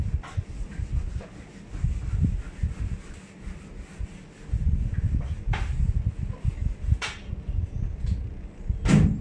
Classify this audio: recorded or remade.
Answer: recorded